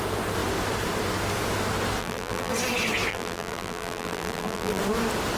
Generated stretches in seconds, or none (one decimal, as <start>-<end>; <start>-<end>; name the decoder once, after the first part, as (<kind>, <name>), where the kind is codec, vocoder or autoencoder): 2.0-2.5 (vocoder, BigVGAN v2); 3.1-4.8